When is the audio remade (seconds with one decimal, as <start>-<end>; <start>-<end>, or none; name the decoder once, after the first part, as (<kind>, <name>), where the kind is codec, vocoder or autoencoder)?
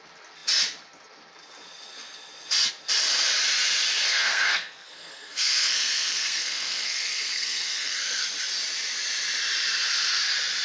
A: 4.1-8.2 (codec, SNAC)